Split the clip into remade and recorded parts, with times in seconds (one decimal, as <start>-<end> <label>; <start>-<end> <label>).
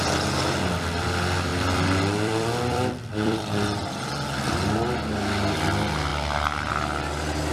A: 0.0-1.5 recorded; 1.5-4.0 remade; 4.0-7.5 recorded